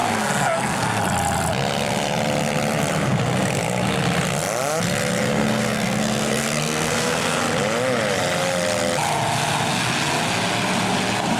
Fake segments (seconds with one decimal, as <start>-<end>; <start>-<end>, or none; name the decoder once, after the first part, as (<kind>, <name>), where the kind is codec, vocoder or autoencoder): 0.0-1.0 (codec, SNAC); 5.3-7.4